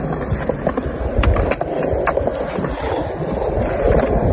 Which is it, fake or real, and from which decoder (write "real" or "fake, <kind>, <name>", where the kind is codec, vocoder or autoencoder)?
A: real